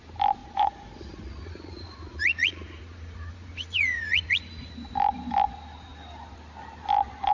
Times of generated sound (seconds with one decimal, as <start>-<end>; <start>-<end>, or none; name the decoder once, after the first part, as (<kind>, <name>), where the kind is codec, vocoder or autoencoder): 0.4-4.7 (vocoder, Vocos)